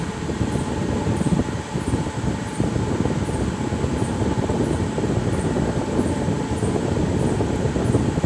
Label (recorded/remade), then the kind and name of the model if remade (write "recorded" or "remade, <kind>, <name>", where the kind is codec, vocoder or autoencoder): recorded